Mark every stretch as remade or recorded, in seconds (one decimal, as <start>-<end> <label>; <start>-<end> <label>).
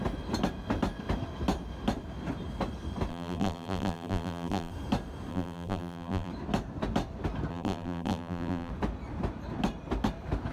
0.0-3.1 recorded; 3.1-4.7 remade; 4.7-5.3 recorded; 5.3-6.3 remade; 6.3-7.5 recorded; 7.5-8.7 remade; 8.7-10.5 recorded